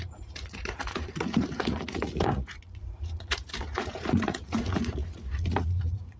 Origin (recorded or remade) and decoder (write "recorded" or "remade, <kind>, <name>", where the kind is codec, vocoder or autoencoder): remade, vocoder, Vocos